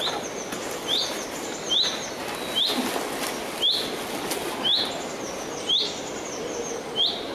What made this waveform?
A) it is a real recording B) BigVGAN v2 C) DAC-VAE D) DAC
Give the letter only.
A